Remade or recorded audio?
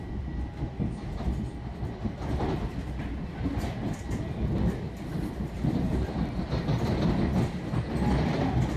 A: recorded